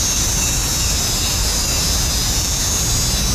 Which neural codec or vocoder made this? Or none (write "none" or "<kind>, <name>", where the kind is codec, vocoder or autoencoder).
none